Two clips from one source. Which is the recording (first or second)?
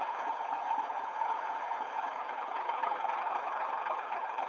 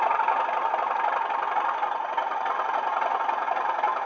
second